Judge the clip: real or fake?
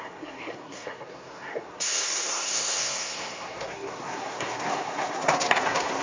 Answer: fake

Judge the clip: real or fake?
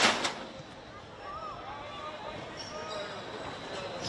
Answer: real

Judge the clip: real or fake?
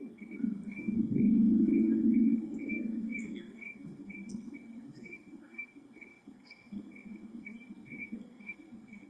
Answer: fake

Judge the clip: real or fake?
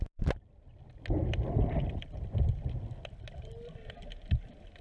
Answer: real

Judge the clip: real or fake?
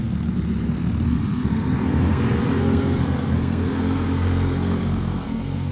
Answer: fake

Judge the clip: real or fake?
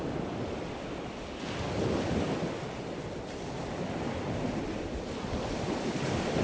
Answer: real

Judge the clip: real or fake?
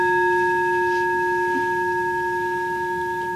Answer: real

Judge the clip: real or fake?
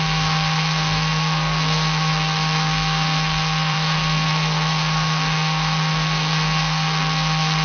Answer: fake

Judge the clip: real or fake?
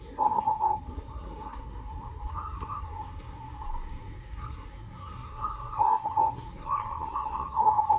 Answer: fake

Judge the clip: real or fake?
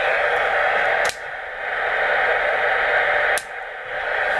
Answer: real